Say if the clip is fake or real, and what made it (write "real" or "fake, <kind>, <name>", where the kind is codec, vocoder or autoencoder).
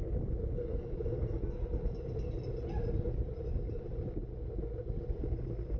real